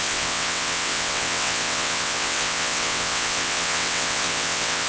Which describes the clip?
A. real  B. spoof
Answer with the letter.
B